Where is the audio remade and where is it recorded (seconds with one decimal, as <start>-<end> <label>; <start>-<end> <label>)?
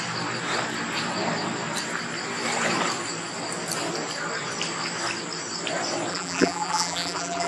0.0-6.1 recorded; 6.1-7.5 remade